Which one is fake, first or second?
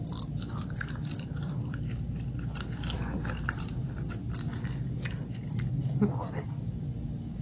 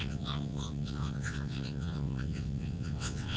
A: second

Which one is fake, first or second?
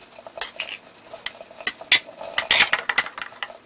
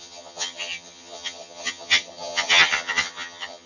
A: second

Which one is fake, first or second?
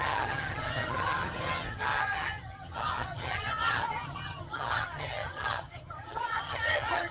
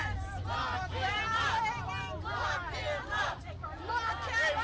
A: first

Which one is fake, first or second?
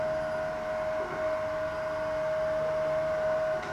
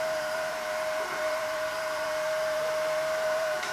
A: second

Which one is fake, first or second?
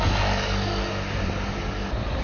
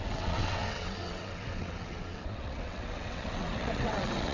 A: second